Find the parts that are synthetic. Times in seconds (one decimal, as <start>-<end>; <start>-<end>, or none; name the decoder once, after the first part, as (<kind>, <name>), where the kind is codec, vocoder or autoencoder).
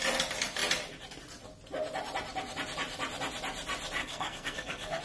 4.0-5.0 (codec, SNAC)